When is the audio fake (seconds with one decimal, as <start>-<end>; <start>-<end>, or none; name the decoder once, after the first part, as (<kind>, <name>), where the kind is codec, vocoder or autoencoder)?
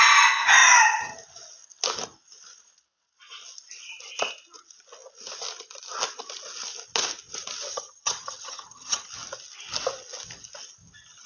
7.7-9.1 (vocoder, HiFi-GAN)